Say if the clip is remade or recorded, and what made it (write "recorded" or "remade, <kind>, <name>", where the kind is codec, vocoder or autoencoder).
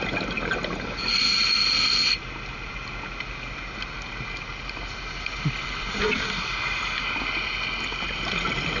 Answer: recorded